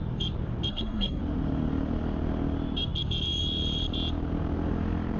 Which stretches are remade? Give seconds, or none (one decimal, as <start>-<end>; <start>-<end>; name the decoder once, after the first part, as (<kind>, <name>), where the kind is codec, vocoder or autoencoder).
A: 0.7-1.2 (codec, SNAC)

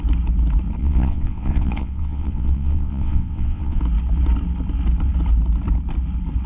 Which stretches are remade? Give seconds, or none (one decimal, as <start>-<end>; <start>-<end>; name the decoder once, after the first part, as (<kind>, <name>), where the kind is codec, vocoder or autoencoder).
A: 0.8-3.8 (vocoder, WaveNeXt)

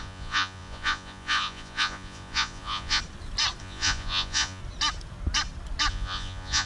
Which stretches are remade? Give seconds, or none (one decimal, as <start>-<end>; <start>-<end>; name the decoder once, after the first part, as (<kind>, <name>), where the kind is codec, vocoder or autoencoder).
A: 0.0-3.0 (vocoder, Vocos); 3.6-4.6; 5.9-6.7

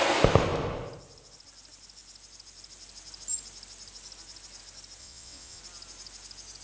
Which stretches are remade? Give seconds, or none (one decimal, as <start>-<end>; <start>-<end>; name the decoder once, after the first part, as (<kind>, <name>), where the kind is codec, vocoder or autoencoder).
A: 5.0-5.6 (vocoder, WaveNeXt)

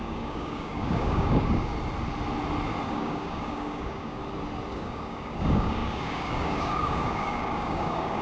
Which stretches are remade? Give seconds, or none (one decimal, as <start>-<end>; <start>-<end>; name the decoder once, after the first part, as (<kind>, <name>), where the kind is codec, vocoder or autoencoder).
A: 0.0-1.7 (codec, DAC); 2.9-4.2; 4.7-8.2

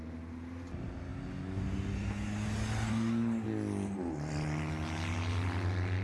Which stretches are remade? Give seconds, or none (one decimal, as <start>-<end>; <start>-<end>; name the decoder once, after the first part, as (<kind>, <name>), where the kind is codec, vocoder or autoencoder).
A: none

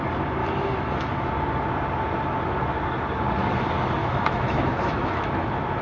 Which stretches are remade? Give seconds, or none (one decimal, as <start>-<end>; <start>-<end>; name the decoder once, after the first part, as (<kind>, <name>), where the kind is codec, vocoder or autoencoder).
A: 0.4-1.3 (autoencoder, DAC-VAE); 4.0-5.3